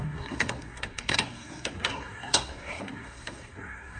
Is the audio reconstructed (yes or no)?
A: yes